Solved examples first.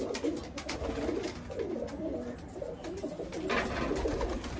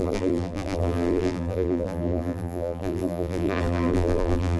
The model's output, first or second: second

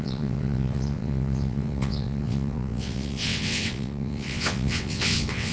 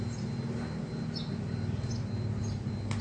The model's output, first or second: first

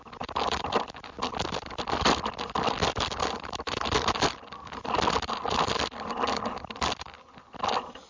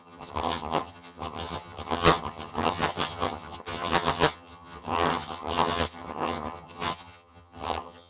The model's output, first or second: second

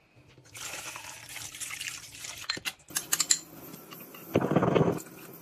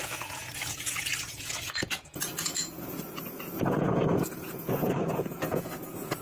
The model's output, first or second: second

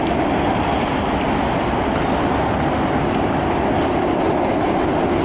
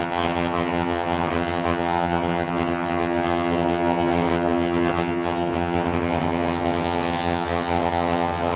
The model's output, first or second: second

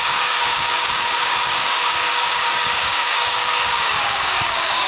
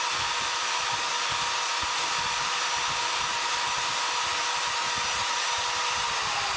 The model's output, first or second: first